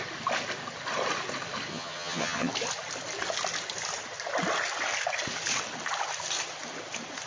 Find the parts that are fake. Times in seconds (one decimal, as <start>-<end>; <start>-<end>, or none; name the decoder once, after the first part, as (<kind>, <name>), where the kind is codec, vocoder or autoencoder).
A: 1.7-2.5 (vocoder, HiFi-GAN)